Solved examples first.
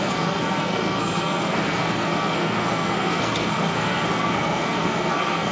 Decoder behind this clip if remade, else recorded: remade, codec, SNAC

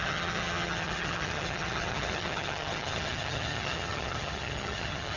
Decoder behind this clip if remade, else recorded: remade, vocoder, HiFi-GAN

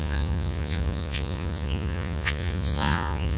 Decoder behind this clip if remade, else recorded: remade, vocoder, Vocos